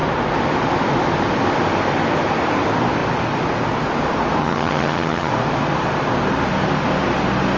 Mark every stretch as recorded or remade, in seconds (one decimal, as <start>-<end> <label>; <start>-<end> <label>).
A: 0.0-4.4 recorded; 4.4-5.3 remade; 5.3-7.6 recorded